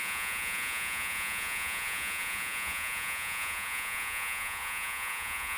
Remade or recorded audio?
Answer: remade